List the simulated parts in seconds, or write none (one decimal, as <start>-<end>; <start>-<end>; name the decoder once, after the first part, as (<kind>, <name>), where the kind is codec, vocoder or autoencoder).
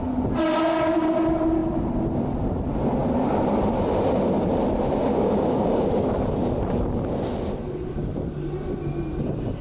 5.0-5.9 (codec, DAC)